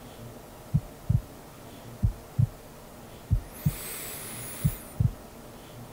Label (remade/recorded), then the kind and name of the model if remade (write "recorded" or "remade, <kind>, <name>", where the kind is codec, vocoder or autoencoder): recorded